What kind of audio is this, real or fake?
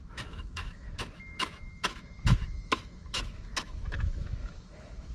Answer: fake